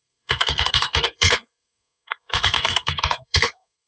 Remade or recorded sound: remade